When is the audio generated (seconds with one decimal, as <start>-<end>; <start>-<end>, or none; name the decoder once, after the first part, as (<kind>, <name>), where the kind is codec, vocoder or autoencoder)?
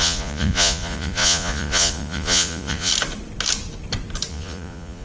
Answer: 0.0-2.9 (vocoder, Vocos); 4.3-5.0